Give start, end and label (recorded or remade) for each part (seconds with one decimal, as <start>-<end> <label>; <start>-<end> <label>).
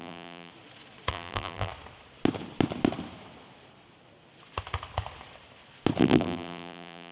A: 0.0-0.5 remade; 0.5-1.1 recorded; 1.1-1.7 remade; 1.7-6.0 recorded; 6.0-7.1 remade